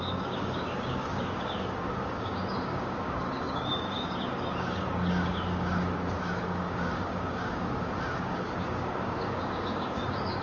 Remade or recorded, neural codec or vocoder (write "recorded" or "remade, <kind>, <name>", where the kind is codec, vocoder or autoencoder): remade, codec, DAC